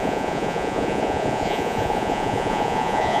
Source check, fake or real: fake